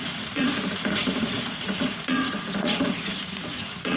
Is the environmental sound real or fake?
fake